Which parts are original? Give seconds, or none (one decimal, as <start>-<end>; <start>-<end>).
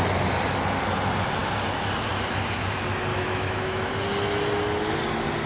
0.0-3.1; 3.9-5.5